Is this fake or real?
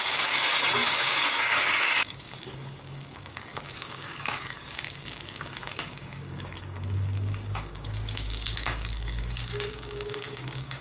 fake